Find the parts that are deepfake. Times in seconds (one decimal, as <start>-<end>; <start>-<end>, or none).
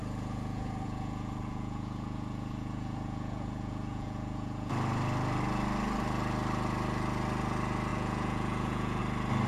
0.0-4.7; 7.9-9.0